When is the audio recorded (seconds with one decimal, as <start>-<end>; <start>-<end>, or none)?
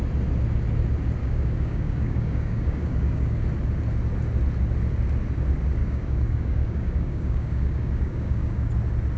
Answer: 0.0-1.2; 3.4-5.8; 8.7-9.2